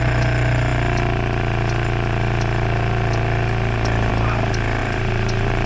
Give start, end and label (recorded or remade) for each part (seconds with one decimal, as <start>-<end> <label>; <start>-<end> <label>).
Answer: 0.0-4.8 recorded; 4.8-5.7 remade